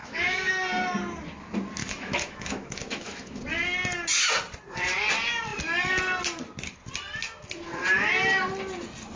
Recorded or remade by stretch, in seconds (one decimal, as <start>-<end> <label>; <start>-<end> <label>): 0.0-0.5 remade; 0.5-1.8 recorded; 1.8-3.4 remade; 3.4-9.2 recorded